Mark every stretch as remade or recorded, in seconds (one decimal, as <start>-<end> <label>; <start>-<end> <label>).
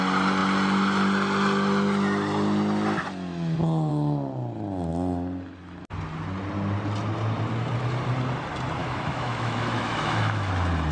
0.0-8.8 recorded; 8.8-10.5 remade; 10.5-10.9 recorded